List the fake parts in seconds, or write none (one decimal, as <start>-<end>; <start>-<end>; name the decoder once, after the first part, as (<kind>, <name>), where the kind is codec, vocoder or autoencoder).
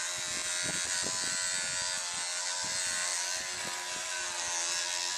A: none